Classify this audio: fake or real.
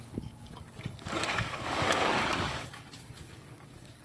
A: fake